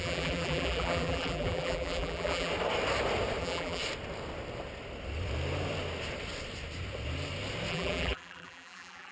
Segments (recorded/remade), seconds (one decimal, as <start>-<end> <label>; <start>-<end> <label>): 0.0-2.5 remade; 2.5-3.4 recorded; 3.4-3.8 remade; 3.8-7.7 recorded; 7.7-9.1 remade